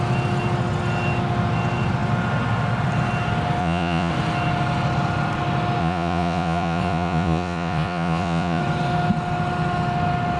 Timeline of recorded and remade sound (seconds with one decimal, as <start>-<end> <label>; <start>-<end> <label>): 0.0-3.6 recorded; 3.6-4.1 remade; 4.1-5.8 recorded; 5.8-8.6 remade; 8.6-10.4 recorded